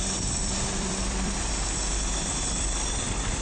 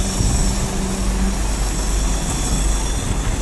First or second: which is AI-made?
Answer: first